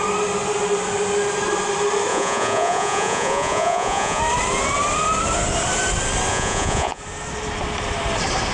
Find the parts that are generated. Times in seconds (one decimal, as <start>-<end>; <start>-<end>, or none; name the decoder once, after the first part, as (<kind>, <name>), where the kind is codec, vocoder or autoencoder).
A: 2.1-4.2 (vocoder, Vocos); 6.3-7.0